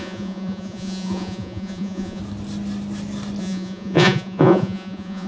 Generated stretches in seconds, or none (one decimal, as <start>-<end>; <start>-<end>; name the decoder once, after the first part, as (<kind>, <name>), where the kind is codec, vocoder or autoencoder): 0.0-2.2 (vocoder, Vocos); 3.4-5.3